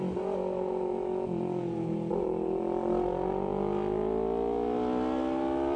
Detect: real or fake real